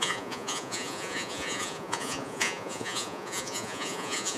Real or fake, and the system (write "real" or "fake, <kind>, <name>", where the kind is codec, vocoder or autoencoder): fake, vocoder, Vocos